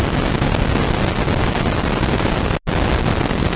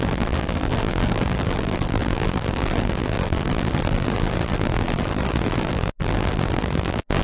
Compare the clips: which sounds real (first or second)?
first